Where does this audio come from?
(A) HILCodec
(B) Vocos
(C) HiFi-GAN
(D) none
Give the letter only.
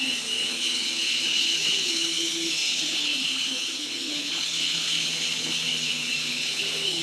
A